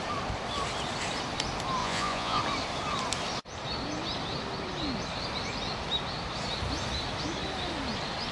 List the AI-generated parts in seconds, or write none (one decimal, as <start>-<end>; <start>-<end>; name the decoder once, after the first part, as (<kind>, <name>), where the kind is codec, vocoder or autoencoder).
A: 1.8-2.4 (vocoder, Vocos)